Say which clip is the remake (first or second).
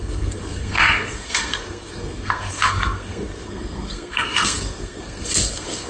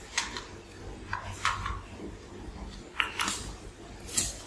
first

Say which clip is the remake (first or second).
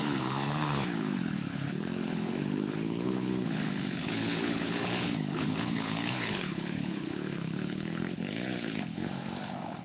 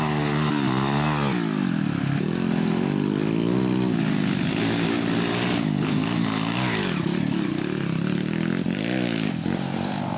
first